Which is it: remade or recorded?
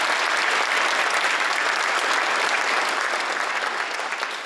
recorded